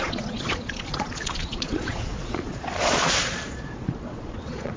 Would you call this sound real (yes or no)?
no